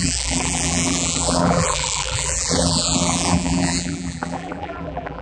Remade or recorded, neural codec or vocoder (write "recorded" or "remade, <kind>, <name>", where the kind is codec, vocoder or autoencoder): remade, vocoder, BigVGAN v2